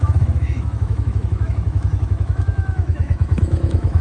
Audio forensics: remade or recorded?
remade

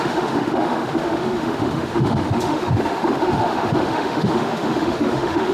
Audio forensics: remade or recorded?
remade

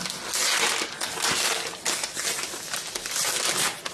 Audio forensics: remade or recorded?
recorded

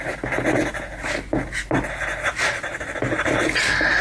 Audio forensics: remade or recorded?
recorded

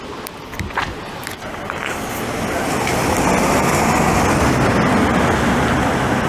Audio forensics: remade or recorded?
recorded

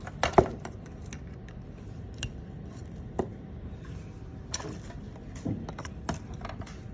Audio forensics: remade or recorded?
recorded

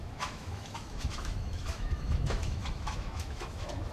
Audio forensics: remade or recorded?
remade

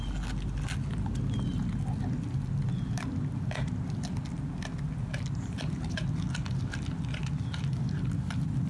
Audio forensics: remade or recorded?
recorded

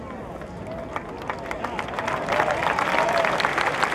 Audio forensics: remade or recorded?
recorded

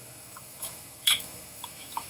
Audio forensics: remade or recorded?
remade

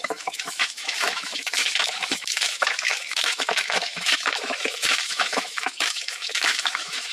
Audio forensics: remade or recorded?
remade